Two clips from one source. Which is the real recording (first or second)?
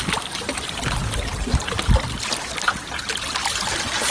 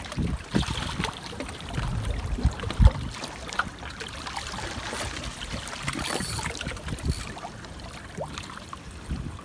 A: first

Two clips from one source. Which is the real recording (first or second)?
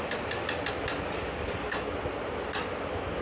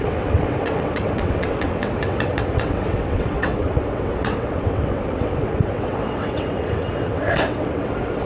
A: first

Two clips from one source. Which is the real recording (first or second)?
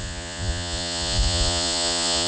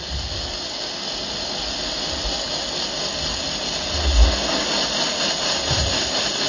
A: second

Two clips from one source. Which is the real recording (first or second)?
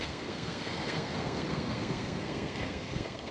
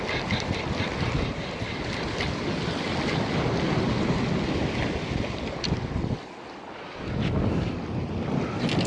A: second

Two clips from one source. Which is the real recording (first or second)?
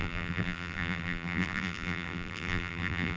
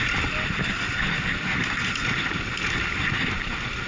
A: second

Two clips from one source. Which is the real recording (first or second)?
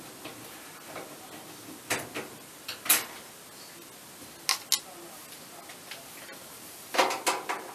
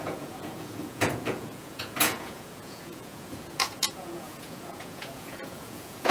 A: first